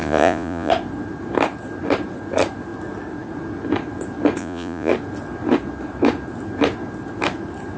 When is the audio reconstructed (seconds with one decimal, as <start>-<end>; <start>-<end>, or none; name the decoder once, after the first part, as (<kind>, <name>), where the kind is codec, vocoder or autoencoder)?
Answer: 0.0-0.7 (vocoder, Vocos); 4.4-4.9